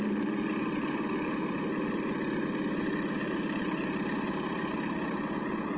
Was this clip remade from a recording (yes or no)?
yes